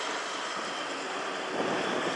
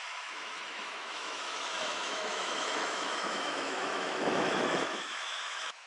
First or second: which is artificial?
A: second